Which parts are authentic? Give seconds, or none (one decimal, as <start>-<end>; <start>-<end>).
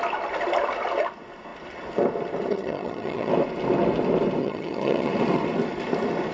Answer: 0.0-2.5; 3.3-4.4; 5.1-6.3